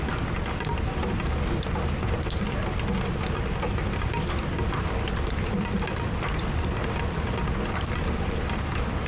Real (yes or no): yes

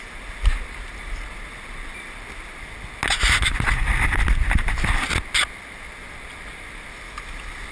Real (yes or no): yes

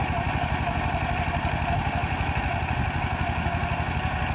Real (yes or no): yes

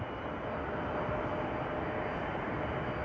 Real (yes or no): yes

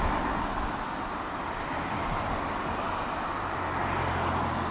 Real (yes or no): yes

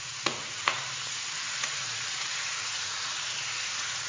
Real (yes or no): no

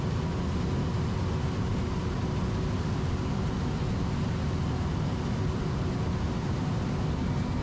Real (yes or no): yes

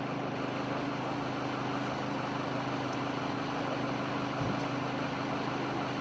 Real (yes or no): yes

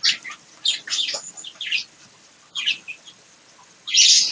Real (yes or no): yes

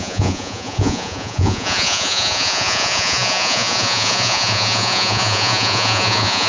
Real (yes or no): no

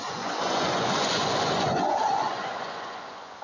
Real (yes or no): no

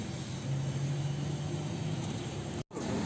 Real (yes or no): yes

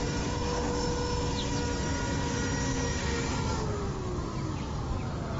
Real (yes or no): yes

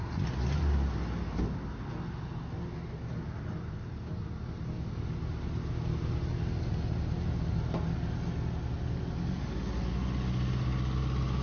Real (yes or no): yes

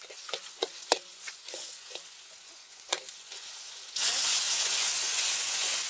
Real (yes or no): no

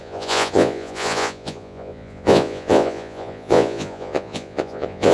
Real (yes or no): no